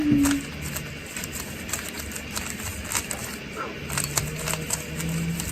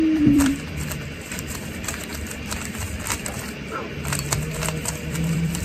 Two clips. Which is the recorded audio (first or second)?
first